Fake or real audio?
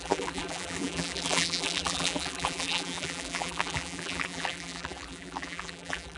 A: fake